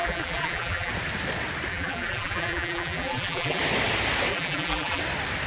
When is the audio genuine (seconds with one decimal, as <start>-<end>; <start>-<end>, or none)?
0.9-1.7; 3.6-4.3; 5.0-5.5